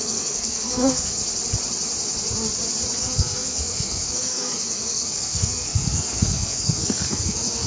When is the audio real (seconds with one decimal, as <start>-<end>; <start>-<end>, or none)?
1.2-3.0